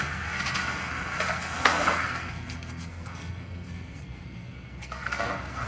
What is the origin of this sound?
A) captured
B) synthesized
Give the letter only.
B